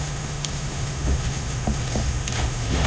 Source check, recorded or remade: remade